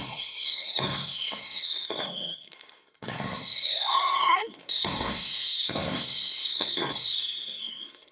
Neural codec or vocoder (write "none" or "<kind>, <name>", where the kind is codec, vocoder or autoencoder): codec, SNAC